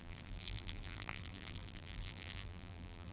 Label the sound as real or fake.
fake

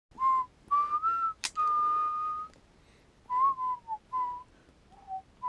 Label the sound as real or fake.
real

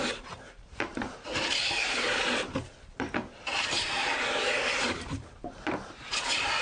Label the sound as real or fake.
fake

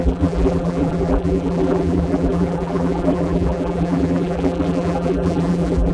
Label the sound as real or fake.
fake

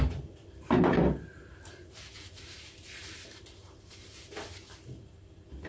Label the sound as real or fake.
real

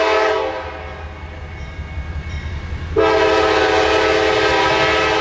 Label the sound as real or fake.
real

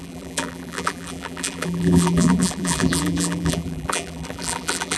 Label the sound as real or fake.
fake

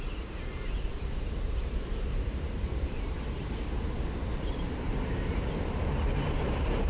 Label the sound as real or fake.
fake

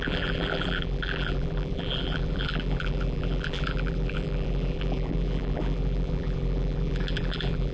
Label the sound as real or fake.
fake